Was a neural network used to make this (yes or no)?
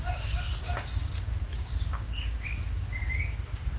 yes